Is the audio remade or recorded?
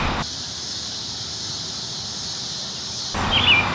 recorded